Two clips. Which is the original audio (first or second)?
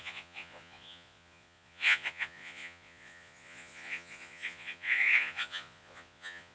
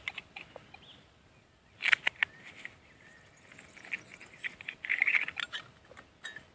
second